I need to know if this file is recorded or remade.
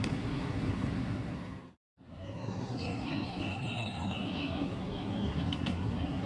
remade